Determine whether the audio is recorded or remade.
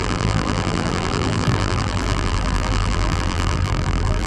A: remade